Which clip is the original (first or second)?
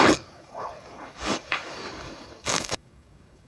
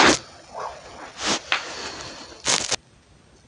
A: second